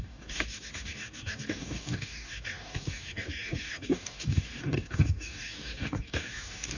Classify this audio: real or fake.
fake